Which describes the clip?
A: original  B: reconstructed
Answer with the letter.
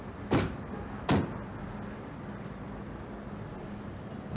A